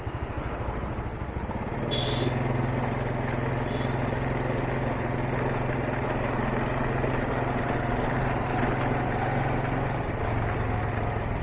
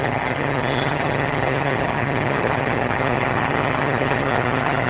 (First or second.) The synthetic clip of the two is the second